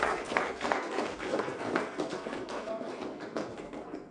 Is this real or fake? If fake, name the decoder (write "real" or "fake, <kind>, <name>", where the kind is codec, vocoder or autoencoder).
fake, codec, SNAC